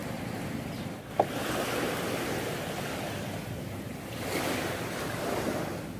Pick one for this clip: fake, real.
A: real